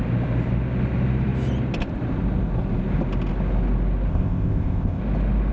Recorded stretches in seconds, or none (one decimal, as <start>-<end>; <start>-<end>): 0.0-4.1; 5.0-5.5